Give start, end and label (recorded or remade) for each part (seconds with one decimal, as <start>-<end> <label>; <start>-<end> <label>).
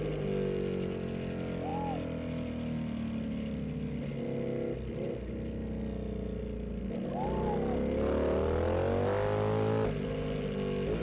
0.0-11.0 recorded